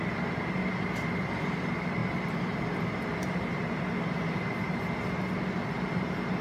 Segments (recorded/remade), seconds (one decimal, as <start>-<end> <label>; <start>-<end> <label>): 0.0-6.4 recorded